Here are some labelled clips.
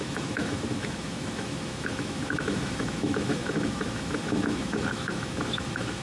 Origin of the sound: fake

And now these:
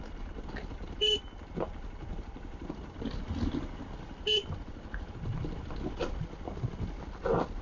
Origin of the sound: real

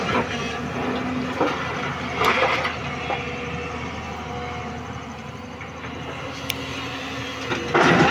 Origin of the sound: real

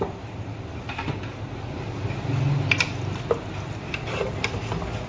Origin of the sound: real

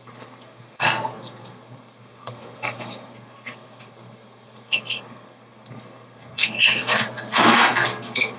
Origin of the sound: fake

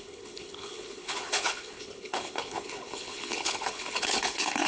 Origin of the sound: fake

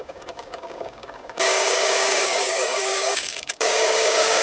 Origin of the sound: fake